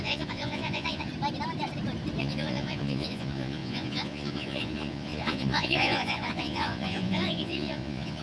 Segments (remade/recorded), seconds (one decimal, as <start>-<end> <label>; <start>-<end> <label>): 0.0-1.1 remade; 1.1-2.2 recorded; 2.2-8.2 remade